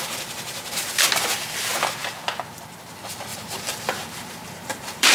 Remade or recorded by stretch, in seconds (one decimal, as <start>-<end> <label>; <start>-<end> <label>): 0.0-3.3 recorded; 3.3-5.1 remade